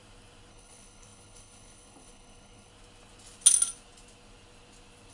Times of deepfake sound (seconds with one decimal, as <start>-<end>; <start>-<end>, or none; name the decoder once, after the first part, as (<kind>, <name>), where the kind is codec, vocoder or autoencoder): 0.5-2.7 (codec, HILCodec)